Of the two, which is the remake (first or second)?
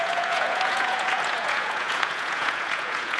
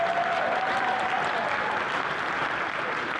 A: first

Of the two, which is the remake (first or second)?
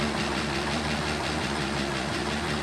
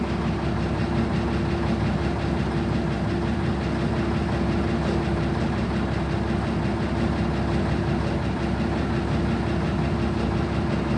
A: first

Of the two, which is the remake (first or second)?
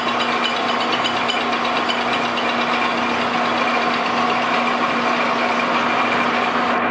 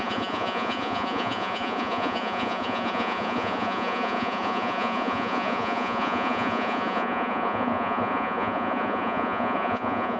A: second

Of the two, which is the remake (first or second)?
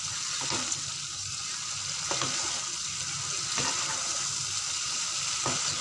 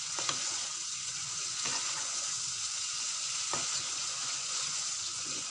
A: second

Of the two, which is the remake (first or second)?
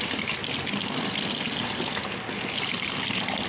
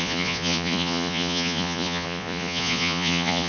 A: second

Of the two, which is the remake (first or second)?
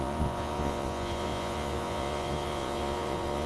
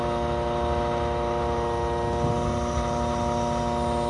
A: first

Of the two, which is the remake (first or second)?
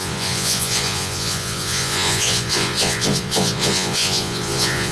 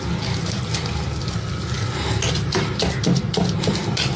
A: first